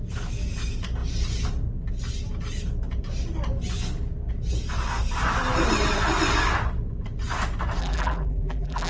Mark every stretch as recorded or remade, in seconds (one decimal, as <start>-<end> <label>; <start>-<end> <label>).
0.0-7.8 recorded; 7.8-8.9 remade